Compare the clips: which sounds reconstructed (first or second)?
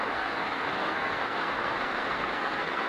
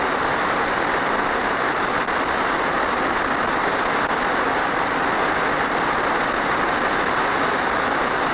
first